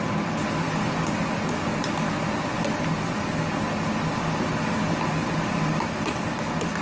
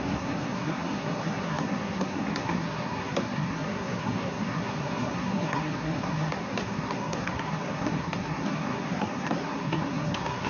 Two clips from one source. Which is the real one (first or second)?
first